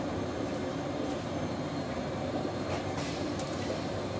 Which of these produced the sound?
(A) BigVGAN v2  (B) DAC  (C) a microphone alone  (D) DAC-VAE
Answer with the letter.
A